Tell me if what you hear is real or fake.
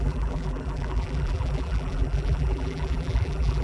fake